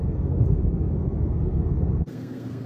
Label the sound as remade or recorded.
remade